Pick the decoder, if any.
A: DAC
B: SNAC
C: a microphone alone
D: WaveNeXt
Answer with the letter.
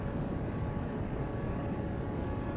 A